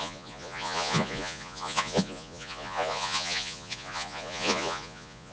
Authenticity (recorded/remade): remade